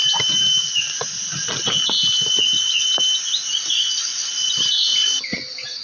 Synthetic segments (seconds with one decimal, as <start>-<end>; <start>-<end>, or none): none